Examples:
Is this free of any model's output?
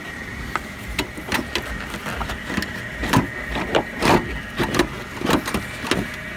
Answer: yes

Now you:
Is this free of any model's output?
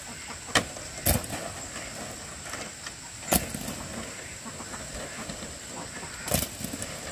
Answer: yes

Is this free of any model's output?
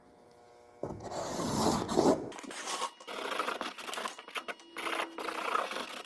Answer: yes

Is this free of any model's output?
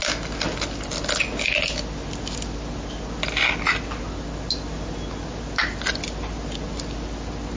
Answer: yes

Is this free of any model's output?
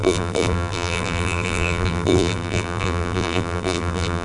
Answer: no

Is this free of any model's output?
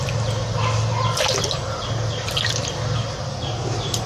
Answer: yes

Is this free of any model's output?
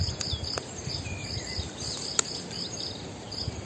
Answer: yes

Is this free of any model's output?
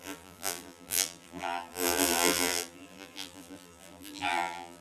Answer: no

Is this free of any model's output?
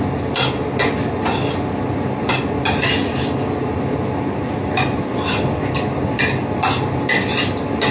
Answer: yes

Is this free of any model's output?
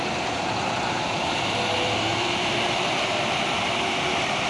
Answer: no